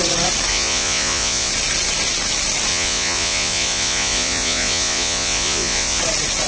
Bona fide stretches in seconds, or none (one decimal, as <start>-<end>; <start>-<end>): 0.0-0.5; 1.5-2.7; 6.0-6.5